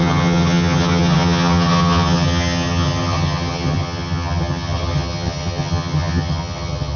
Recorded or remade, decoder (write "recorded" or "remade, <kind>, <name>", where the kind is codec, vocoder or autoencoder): remade, vocoder, HiFi-GAN